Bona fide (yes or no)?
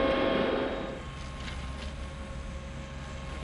yes